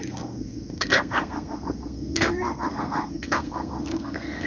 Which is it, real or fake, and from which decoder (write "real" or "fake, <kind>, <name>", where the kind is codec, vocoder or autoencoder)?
fake, codec, SNAC